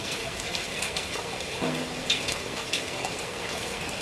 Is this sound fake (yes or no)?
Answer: yes